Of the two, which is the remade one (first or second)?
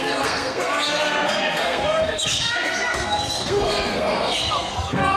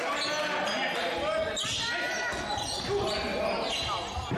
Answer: first